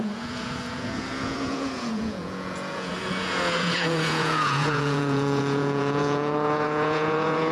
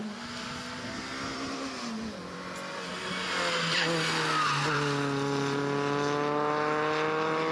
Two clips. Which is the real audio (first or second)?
second